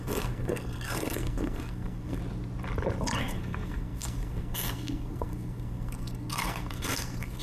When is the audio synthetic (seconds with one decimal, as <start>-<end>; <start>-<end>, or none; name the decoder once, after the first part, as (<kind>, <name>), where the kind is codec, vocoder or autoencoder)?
0.0-2.2 (codec, SNAC); 3.2-7.4